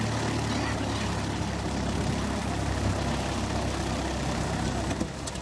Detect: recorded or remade recorded